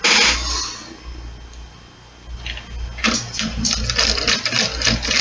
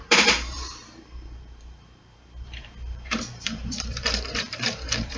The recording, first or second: first